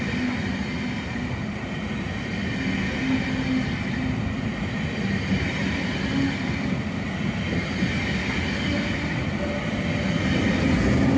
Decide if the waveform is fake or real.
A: real